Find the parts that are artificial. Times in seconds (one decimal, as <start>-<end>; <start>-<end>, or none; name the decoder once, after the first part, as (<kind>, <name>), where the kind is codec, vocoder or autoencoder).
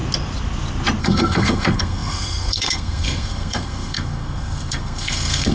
1.0-5.5 (codec, SNAC)